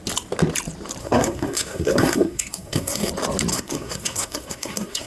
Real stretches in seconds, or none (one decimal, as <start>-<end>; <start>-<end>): 0.0-1.0; 3.1-3.5